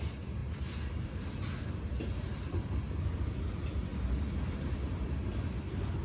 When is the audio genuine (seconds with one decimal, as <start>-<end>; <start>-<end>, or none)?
0.4-1.6; 3.9-5.6